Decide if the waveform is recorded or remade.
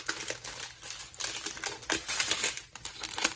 recorded